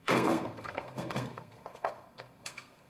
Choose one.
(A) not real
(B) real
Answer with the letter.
A